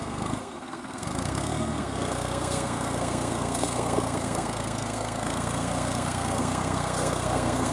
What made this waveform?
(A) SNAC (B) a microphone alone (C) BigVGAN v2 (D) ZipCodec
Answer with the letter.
A